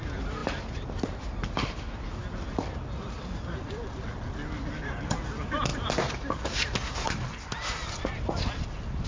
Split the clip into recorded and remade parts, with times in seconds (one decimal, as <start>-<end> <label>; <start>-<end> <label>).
0.0-9.1 recorded